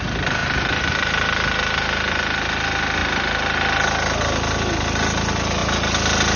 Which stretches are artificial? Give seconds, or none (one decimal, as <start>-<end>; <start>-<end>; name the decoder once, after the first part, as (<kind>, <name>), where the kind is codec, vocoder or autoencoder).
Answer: none